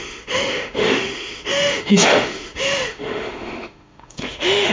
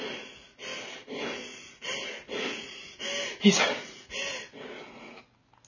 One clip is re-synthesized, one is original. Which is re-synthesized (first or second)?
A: first